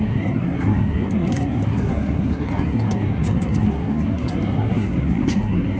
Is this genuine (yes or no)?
no